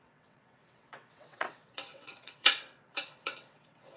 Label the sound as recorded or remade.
remade